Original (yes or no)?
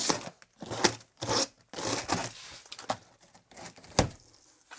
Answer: yes